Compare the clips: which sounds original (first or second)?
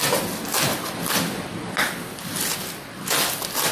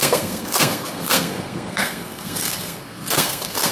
first